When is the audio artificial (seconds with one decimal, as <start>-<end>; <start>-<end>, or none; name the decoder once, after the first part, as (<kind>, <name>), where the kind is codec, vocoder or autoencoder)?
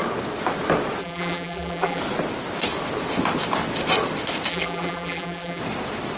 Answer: 1.0-2.0 (vocoder, BigVGAN v2); 4.5-5.6